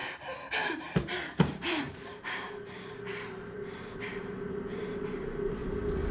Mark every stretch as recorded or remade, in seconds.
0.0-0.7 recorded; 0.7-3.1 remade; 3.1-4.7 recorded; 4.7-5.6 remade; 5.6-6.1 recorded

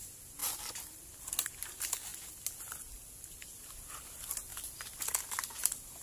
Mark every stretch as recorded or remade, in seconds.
0.0-6.0 recorded

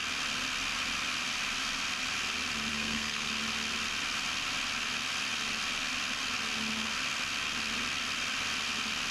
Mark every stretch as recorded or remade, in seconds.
0.0-2.7 recorded; 2.7-3.3 remade; 3.3-9.1 recorded

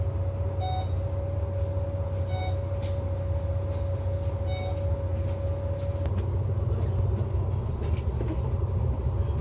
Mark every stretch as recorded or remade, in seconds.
0.0-9.4 recorded

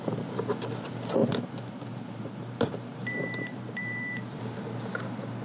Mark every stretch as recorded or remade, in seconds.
0.0-1.2 recorded; 1.2-4.4 remade; 4.4-5.4 recorded

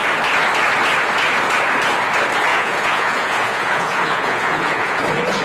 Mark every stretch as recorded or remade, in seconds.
0.0-2.5 recorded; 2.5-5.0 remade; 5.0-5.4 recorded

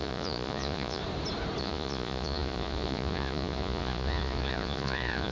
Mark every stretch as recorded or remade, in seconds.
0.0-1.0 remade; 1.0-1.6 recorded; 1.6-5.3 remade

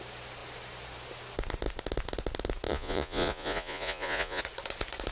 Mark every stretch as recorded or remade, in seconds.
0.0-2.7 recorded; 2.7-4.4 remade; 4.4-5.1 recorded